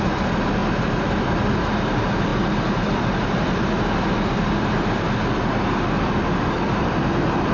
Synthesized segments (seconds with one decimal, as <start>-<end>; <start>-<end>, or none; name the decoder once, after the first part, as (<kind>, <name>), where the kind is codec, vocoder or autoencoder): none